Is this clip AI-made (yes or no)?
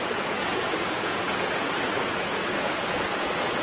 yes